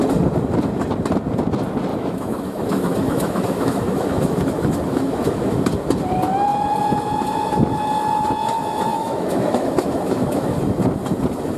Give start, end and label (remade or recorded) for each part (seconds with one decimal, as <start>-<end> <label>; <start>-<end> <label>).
0.0-1.9 recorded; 1.9-5.6 remade; 5.6-8.9 recorded; 8.9-10.6 remade; 10.6-11.6 recorded